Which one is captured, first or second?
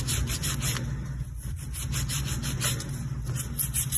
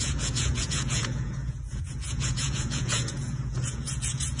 first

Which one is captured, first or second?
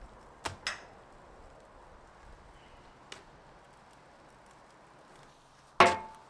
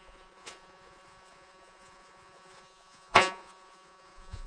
first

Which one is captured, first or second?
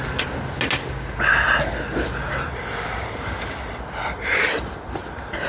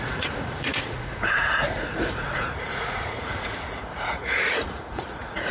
first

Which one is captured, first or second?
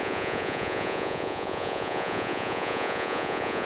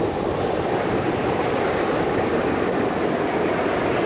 second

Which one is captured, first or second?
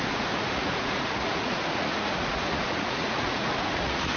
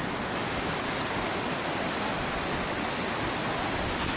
second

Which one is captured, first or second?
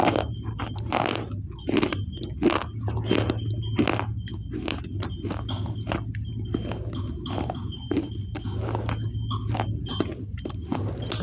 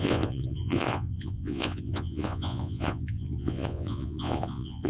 first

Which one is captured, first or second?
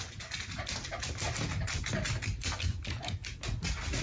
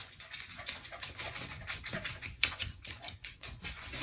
first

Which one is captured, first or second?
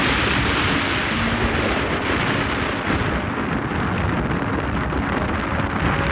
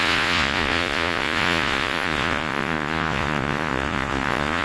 first